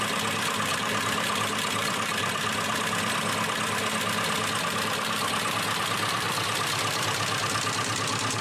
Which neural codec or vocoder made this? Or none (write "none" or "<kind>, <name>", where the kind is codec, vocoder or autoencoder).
none